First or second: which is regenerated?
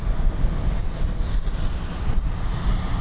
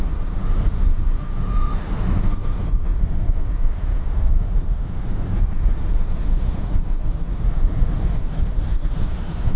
second